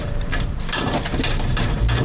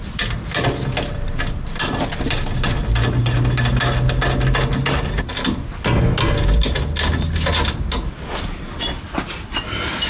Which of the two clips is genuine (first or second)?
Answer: second